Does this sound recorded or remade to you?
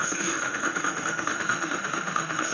remade